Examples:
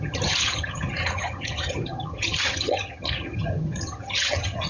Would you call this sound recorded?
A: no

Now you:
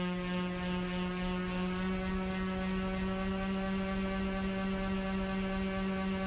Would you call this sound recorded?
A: yes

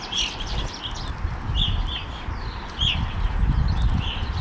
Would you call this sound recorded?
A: yes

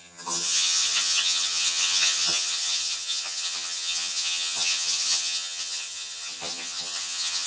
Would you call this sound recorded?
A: no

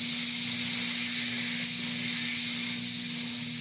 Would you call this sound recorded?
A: yes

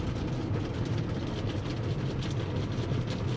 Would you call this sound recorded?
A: yes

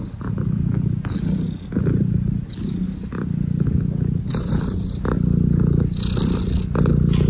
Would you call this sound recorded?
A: yes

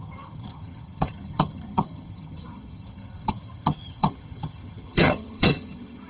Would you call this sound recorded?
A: no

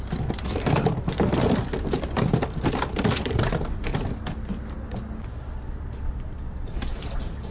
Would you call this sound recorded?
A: yes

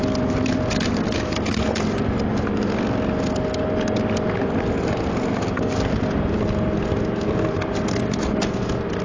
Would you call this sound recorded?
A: yes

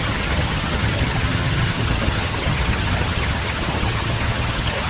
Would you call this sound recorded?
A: no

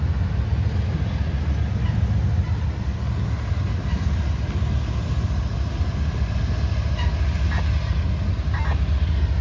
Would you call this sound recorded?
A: yes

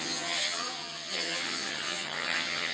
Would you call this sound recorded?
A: no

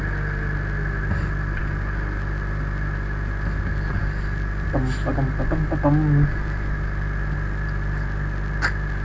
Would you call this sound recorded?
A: yes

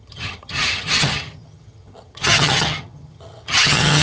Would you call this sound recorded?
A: no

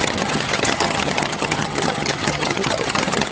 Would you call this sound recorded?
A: no